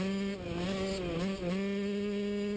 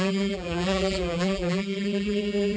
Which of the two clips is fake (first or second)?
second